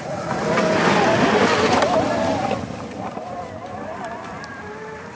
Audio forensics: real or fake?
real